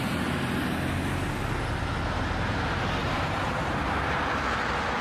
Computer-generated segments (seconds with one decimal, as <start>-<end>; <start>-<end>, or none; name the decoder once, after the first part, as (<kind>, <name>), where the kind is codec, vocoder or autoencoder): 3.0-3.8 (vocoder, BigVGAN v2)